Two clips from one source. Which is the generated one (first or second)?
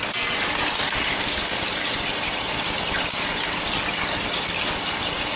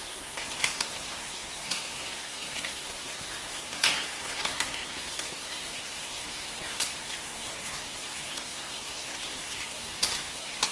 second